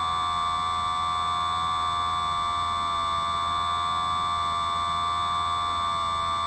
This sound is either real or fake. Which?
real